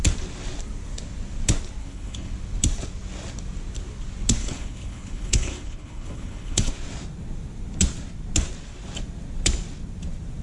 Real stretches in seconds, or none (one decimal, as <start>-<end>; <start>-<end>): 0.0-1.8; 2.3-4.4; 6.7-10.4